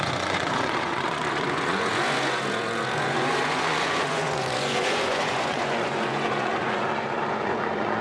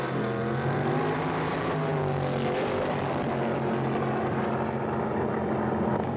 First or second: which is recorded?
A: second